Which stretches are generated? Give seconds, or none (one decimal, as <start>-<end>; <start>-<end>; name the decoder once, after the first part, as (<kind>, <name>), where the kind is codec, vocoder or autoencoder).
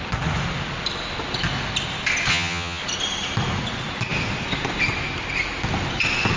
2.3-2.8 (vocoder, HiFi-GAN)